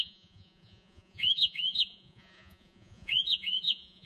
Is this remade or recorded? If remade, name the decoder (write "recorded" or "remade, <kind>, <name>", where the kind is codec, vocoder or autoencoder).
remade, vocoder, Vocos